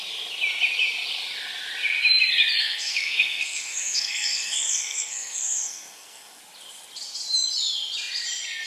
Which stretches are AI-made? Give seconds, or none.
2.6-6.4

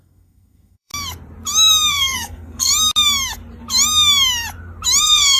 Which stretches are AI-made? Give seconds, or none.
0.0-0.9; 1.9-2.7; 5.0-5.4

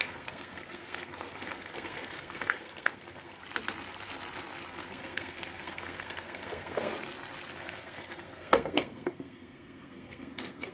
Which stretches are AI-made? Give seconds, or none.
0.0-3.4; 4.7-6.9; 7.6-10.7